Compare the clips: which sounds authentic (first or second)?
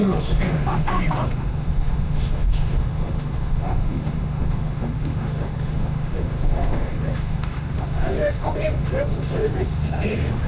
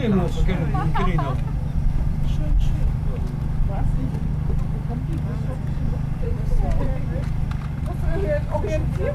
second